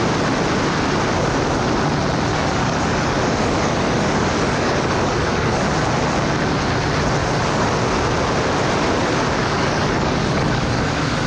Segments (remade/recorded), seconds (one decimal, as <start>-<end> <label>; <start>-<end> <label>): 0.0-2.3 recorded; 2.3-5.6 remade; 5.6-7.2 recorded; 7.2-7.8 remade; 7.8-9.4 recorded; 9.4-11.3 remade